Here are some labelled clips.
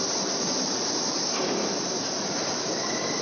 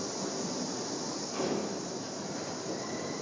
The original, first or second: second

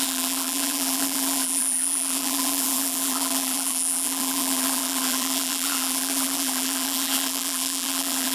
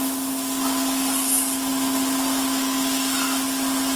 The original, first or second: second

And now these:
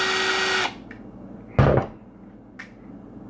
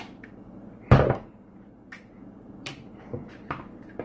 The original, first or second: first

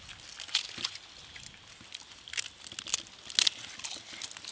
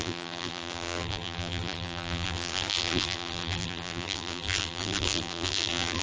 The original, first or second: first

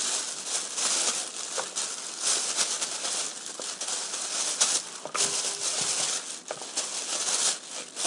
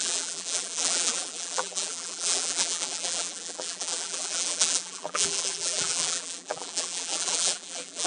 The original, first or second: first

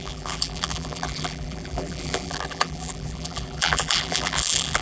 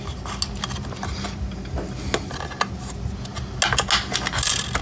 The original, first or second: second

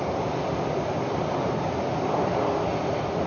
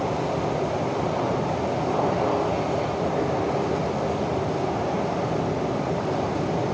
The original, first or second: second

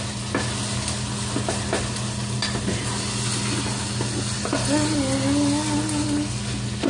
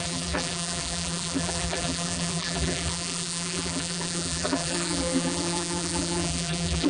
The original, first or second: first